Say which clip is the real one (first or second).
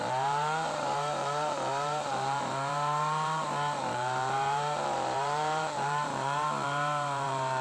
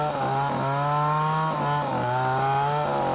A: second